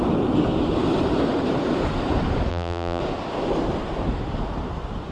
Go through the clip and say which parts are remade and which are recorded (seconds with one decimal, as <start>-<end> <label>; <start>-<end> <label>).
0.0-2.5 recorded; 2.5-3.0 remade; 3.0-5.1 recorded